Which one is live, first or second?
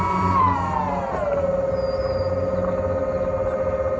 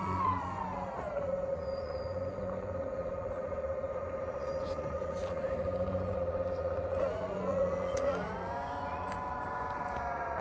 first